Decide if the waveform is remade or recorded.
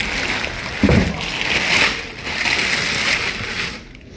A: recorded